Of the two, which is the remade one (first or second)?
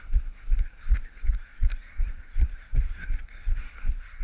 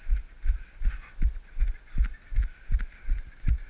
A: first